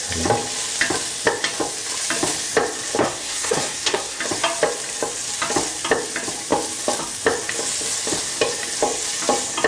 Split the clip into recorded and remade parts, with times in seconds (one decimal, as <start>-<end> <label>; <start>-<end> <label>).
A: 0.0-3.0 recorded; 3.0-4.2 remade; 4.2-9.7 recorded